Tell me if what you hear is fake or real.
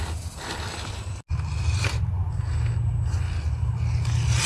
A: real